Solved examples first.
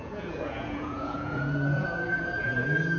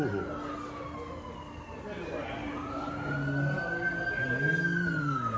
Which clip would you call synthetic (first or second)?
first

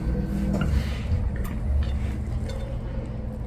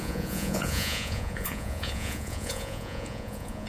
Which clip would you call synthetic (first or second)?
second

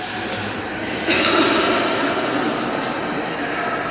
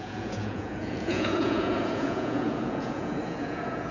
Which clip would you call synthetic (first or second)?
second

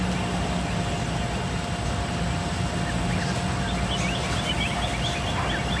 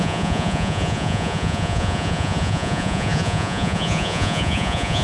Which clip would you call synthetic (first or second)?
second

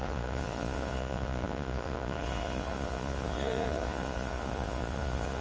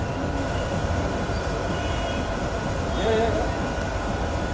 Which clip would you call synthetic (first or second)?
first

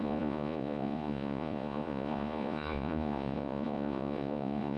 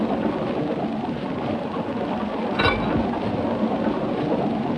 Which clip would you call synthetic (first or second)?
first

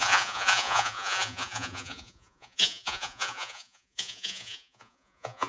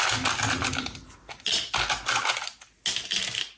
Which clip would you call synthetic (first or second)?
first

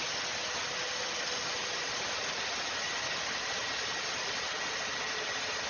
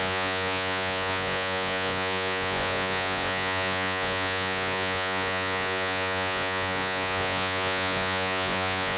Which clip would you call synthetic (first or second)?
second